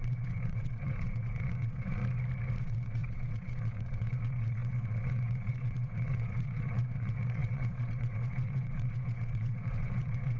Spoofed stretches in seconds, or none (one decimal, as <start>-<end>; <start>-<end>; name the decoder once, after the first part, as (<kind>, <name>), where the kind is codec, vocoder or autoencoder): 0.0-2.0 (vocoder, WaveNeXt); 2.6-10.4